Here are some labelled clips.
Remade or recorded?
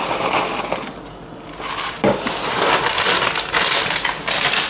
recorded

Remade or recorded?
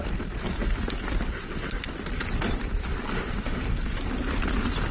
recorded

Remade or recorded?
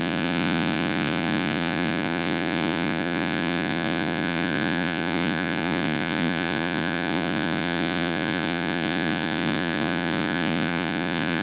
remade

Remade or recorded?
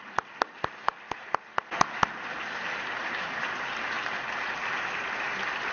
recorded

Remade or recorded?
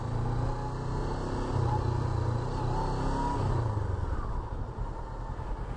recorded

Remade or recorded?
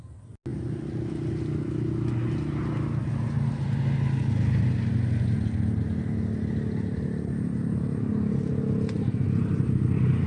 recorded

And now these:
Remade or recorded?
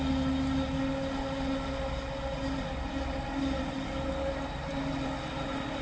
recorded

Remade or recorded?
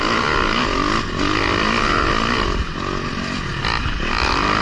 recorded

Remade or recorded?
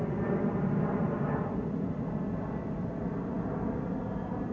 recorded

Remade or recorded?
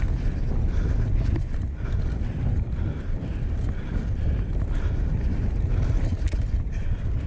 recorded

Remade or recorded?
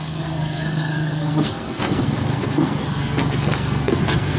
remade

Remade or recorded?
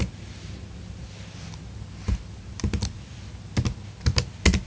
recorded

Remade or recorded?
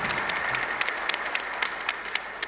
recorded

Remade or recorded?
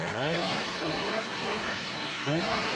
remade